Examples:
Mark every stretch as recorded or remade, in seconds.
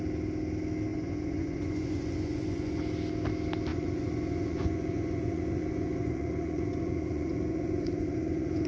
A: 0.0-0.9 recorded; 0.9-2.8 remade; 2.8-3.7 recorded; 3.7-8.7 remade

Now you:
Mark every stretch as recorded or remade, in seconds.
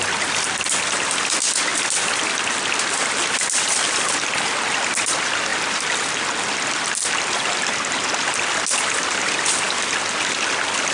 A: 0.0-10.9 recorded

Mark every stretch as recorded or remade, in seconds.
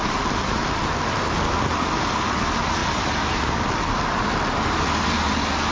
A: 0.0-5.7 recorded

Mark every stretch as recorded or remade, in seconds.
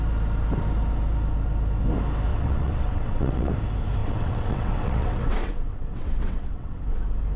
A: 0.0-2.3 recorded; 2.3-3.5 remade; 3.5-4.0 recorded; 4.0-6.8 remade; 6.8-7.4 recorded